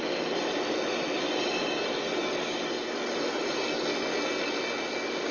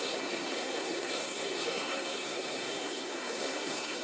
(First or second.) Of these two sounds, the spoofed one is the second